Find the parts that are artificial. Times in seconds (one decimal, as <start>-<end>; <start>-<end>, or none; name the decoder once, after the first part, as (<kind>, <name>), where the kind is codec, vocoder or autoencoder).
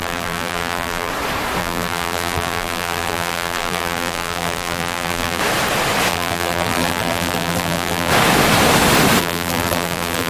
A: 0.0-1.1 (vocoder, BigVGAN v2); 1.6-5.4; 6.1-8.1; 9.2-10.3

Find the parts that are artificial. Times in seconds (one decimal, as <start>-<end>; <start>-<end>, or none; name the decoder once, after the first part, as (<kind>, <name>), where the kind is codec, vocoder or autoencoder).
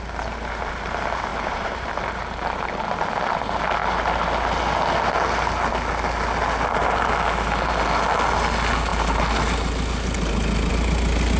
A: 1.3-1.9 (vocoder, BigVGAN v2)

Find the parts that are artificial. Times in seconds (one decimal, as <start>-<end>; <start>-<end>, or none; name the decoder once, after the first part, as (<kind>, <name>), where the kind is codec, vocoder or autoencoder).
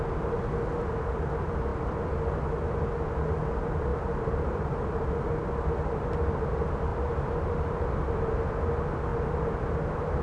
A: 3.9-5.2 (vocoder, BigVGAN v2)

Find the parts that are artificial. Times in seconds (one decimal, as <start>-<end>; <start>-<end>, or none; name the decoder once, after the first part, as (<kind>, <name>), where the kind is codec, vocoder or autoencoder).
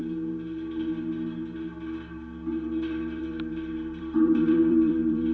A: 3.2-5.3 (vocoder, BigVGAN v2)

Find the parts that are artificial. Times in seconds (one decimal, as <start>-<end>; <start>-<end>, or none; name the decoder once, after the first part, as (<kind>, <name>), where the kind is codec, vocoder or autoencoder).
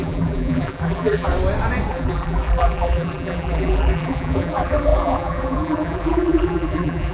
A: 0.0-1.3 (vocoder, BigVGAN v2); 1.9-7.1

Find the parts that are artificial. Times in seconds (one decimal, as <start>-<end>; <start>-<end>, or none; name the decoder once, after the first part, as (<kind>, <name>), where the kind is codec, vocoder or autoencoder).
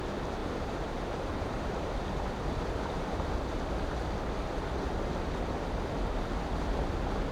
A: 0.4-3.3 (vocoder, BigVGAN v2)